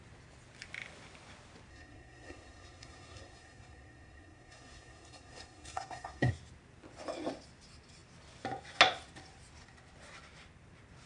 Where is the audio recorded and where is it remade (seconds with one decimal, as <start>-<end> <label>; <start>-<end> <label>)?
0.0-1.7 recorded; 1.7-6.3 remade; 6.3-11.1 recorded

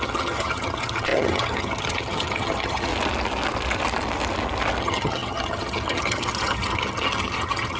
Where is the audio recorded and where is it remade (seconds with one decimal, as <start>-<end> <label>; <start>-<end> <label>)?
0.0-2.9 remade; 2.9-4.8 recorded; 4.8-7.8 remade

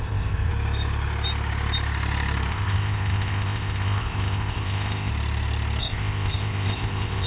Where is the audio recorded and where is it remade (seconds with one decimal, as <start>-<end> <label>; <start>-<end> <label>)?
0.0-0.5 remade; 0.5-2.5 recorded; 2.5-5.1 remade; 5.1-5.8 recorded; 5.8-7.3 remade

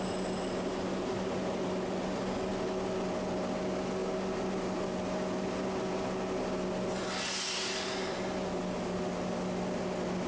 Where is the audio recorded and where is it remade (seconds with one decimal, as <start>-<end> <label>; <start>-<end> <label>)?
0.0-10.3 recorded

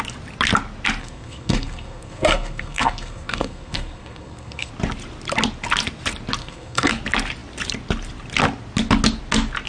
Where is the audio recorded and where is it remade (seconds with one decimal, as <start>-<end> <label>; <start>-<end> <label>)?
0.0-1.0 recorded; 1.0-4.7 remade; 4.7-6.4 recorded; 6.4-6.9 remade; 6.9-9.7 recorded

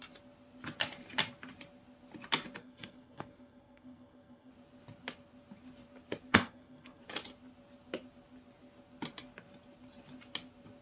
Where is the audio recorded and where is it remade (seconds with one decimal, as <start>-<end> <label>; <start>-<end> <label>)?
0.0-2.6 recorded; 2.6-4.5 remade; 4.5-6.3 recorded; 6.3-7.0 remade; 7.0-10.8 recorded

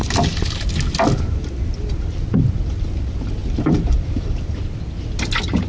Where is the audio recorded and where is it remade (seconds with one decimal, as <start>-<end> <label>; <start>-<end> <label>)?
0.0-5.7 recorded

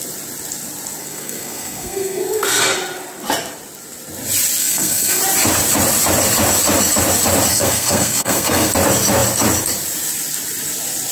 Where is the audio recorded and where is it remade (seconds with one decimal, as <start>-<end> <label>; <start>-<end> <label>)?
0.0-1.0 recorded; 1.0-2.6 remade; 2.6-4.6 recorded; 4.6-5.2 remade; 5.2-7.5 recorded; 7.5-8.7 remade; 8.7-11.1 recorded